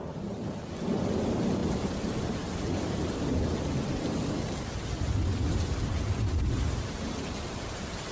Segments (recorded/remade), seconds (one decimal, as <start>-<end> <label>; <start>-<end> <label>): 0.0-1.6 recorded; 1.6-3.2 remade; 3.2-8.1 recorded